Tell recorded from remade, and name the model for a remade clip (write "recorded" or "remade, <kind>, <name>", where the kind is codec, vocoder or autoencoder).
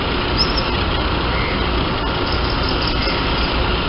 recorded